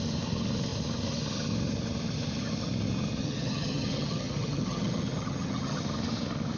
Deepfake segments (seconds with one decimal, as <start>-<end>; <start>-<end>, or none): 3.2-5.8